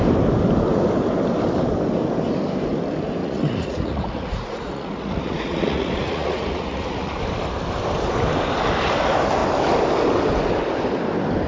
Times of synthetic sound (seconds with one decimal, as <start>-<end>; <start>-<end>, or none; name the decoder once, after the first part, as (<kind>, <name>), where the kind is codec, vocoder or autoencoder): 3.2-7.2 (vocoder, Vocos)